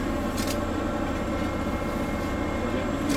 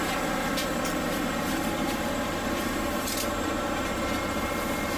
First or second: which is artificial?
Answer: second